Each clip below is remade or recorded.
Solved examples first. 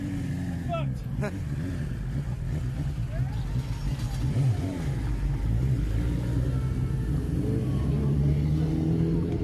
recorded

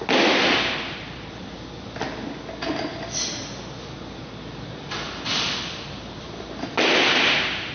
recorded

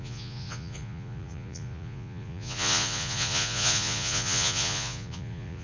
remade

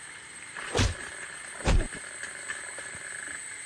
recorded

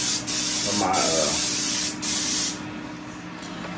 recorded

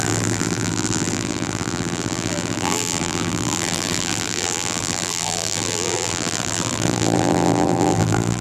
remade